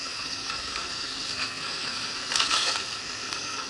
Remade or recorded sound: remade